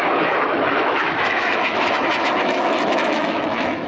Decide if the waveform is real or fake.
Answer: fake